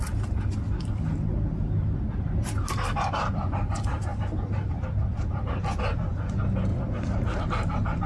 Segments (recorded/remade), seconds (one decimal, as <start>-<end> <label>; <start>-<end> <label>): 0.0-6.7 recorded; 6.7-7.4 remade; 7.4-8.1 recorded